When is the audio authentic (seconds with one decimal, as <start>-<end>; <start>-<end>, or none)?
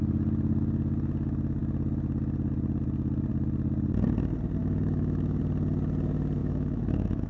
0.0-4.6; 5.4-6.4